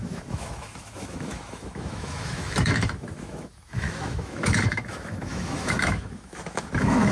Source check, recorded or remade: remade